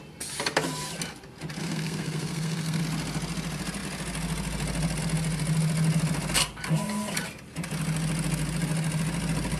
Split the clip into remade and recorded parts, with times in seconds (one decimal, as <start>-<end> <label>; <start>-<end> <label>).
0.0-1.6 recorded; 1.6-2.8 remade; 2.8-9.6 recorded